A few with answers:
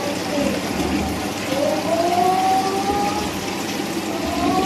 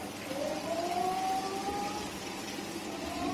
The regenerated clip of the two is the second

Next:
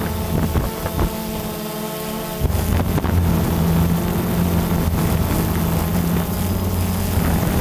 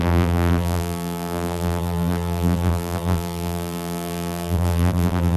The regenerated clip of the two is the second